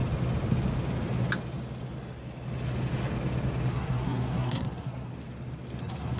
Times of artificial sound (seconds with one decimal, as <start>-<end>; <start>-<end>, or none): 3.7-5.1; 5.8-6.2